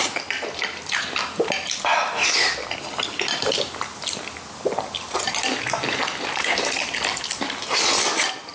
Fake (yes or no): no